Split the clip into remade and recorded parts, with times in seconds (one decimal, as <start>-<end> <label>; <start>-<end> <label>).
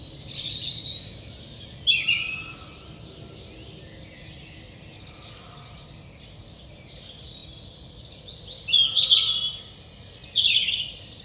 0.0-11.2 recorded